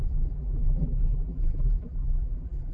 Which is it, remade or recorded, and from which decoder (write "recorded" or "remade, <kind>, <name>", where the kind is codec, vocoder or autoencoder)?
remade, vocoder, BigVGAN v2